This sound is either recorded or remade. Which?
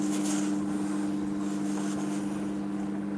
recorded